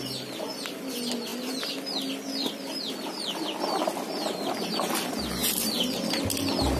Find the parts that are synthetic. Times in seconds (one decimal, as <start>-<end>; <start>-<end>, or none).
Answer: none